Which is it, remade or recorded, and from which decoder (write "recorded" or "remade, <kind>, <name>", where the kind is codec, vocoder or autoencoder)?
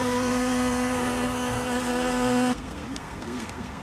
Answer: remade, codec, SNAC